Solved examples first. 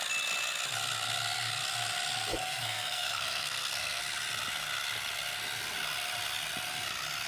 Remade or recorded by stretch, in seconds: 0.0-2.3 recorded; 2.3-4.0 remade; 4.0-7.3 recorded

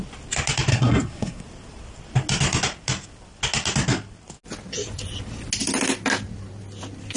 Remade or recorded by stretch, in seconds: 0.0-0.7 recorded; 0.7-1.4 remade; 1.4-7.2 recorded

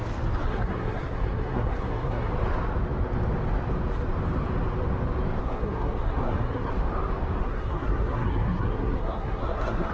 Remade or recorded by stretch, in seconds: 0.0-0.4 recorded; 0.4-2.3 remade; 2.3-5.4 recorded; 5.4-6.7 remade; 6.7-7.4 recorded; 7.4-9.9 remade

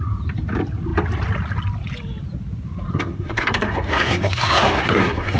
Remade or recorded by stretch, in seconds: 0.0-2.9 recorded; 2.9-5.4 remade

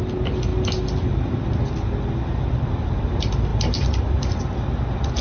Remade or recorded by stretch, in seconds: 0.0-5.2 recorded

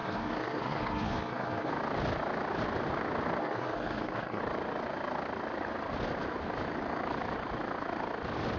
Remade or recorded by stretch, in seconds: 0.0-1.7 remade; 1.7-3.4 recorded; 3.4-4.4 remade; 4.4-8.6 recorded

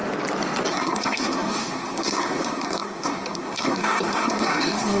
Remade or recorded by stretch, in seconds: 0.0-0.7 recorded; 0.7-5.0 remade